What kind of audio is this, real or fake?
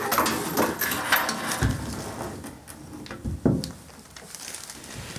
real